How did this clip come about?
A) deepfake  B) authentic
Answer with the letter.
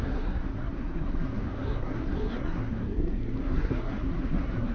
A